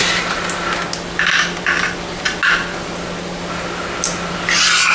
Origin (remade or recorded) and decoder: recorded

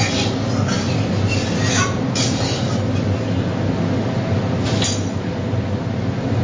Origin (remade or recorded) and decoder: recorded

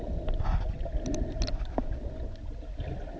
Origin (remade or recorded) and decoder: recorded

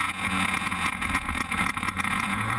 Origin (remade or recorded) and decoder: remade, vocoder, Vocos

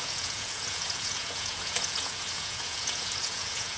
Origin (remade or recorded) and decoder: remade, vocoder, Vocos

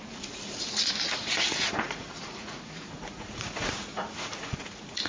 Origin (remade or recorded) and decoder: remade, vocoder, Vocos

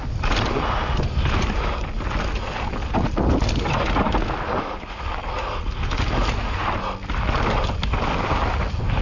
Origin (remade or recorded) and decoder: recorded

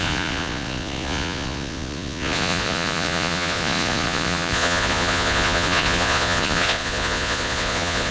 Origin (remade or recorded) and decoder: remade, vocoder, Vocos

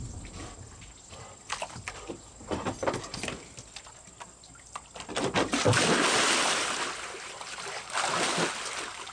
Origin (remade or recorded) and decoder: recorded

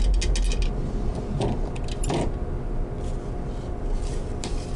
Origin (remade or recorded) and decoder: recorded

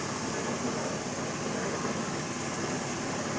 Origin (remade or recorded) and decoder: recorded